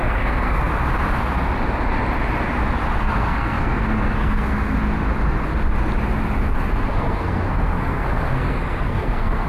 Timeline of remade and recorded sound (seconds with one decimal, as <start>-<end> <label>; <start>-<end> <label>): 0.0-0.7 remade; 0.7-3.0 recorded; 3.0-4.8 remade; 4.8-6.9 recorded; 6.9-9.5 remade